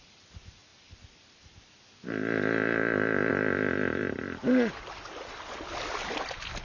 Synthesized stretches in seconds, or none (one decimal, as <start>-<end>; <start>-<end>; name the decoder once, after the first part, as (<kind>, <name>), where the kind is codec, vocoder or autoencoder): none